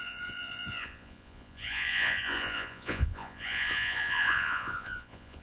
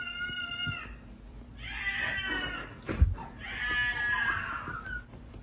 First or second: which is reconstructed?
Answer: first